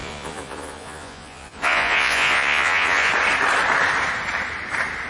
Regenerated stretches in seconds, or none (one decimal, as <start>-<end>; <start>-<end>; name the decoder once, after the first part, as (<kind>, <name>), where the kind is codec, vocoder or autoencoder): 0.0-3.1 (vocoder, Vocos)